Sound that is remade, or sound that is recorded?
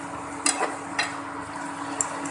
recorded